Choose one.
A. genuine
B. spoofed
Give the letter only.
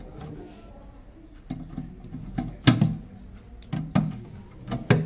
A